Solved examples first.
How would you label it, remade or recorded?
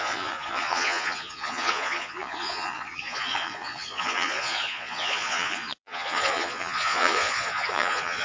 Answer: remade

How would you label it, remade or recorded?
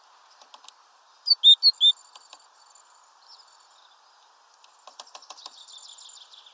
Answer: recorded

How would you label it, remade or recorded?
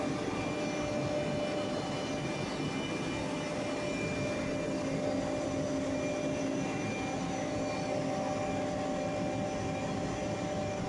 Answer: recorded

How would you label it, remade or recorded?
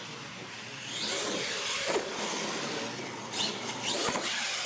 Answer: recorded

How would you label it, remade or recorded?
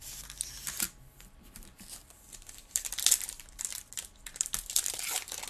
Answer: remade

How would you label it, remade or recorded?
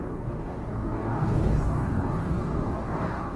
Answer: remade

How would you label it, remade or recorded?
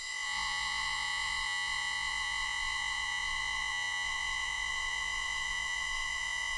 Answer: remade